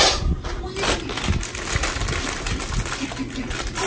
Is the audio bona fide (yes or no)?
yes